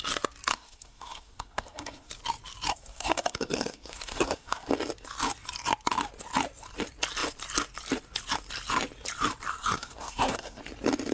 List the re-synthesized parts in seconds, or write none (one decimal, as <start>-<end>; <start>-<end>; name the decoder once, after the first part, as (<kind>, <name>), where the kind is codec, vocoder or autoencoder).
0.5-2.1 (codec, SNAC); 2.7-4.7; 9.5-10.6